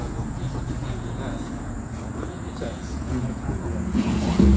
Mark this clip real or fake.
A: fake